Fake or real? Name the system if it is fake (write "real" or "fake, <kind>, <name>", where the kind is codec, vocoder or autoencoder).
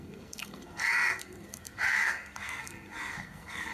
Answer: fake, codec, SNAC